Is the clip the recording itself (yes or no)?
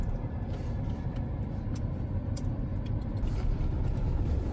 no